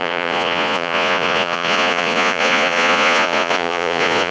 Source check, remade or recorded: remade